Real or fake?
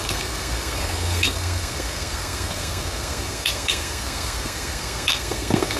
fake